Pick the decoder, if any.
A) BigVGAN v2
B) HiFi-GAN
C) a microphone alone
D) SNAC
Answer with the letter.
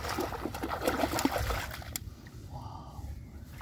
C